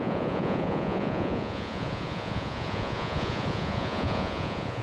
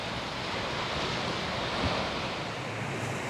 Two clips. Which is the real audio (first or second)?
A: second